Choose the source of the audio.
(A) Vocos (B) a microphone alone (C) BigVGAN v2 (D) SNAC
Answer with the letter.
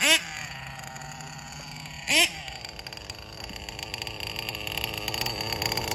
B